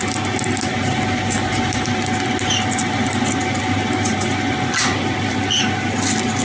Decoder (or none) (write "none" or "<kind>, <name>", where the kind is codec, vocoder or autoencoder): none